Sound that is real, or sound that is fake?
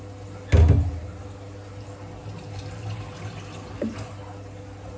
real